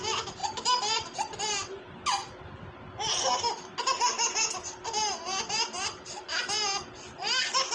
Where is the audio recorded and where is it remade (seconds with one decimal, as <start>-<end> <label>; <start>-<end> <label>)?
0.0-0.4 recorded; 0.4-1.5 remade; 1.5-2.2 recorded; 2.2-4.1 remade; 4.1-7.7 recorded